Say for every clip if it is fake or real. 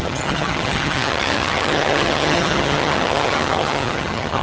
fake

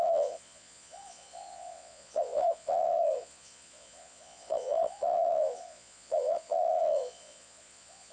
fake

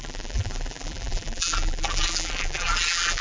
fake